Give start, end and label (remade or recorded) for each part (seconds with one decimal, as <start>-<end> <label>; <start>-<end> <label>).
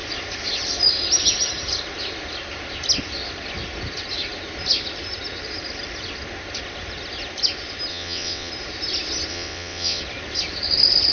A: 0.0-7.9 recorded; 7.9-8.5 remade; 8.5-9.3 recorded; 9.3-10.0 remade; 10.0-11.1 recorded